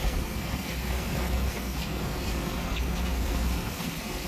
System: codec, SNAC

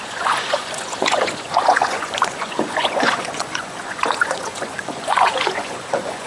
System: vocoder, Vocos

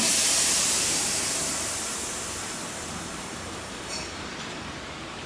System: vocoder, BigVGAN v2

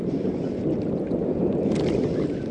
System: none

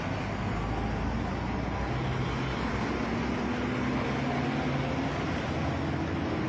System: none